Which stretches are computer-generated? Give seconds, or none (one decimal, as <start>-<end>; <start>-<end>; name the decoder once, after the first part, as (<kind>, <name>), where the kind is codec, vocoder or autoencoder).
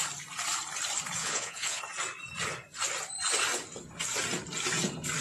1.2-1.8 (vocoder, Vocos)